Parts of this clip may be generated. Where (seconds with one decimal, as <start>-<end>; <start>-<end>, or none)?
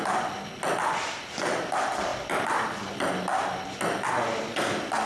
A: none